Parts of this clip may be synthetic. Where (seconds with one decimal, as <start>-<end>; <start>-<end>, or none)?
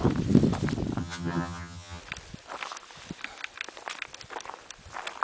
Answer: 1.0-2.0